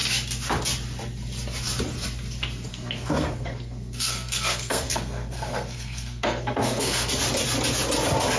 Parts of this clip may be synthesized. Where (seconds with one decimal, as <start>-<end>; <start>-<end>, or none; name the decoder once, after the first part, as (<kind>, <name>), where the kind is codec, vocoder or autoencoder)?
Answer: 2.7-7.1 (codec, SNAC)